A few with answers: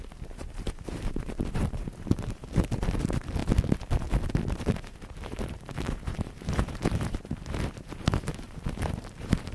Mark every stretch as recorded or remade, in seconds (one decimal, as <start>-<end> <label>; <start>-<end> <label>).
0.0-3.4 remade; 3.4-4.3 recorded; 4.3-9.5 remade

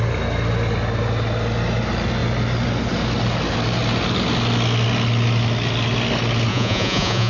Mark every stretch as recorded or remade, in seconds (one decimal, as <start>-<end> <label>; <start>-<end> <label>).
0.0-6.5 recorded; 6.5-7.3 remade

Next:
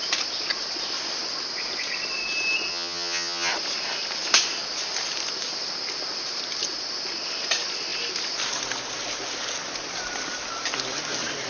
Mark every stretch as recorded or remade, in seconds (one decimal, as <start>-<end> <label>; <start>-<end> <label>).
0.0-2.7 recorded; 2.7-3.5 remade; 3.5-11.5 recorded

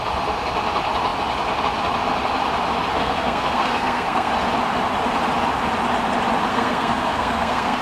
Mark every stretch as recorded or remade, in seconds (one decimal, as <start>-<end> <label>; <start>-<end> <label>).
0.0-3.0 recorded; 3.0-4.3 remade; 4.3-6.5 recorded; 6.5-7.8 remade